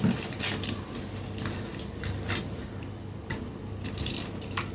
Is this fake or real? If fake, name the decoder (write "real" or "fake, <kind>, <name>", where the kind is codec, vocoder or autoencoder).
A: fake, vocoder, BigVGAN v2